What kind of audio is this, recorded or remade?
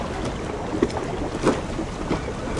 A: recorded